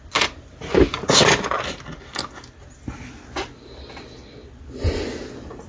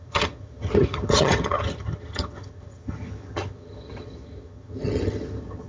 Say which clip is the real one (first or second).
first